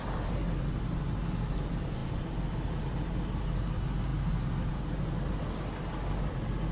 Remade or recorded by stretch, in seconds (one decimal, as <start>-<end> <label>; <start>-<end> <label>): 0.0-6.7 recorded